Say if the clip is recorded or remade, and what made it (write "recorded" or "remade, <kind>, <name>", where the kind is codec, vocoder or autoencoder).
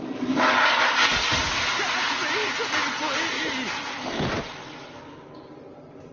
recorded